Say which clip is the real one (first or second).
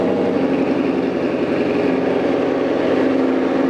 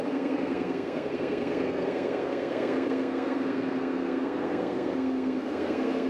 first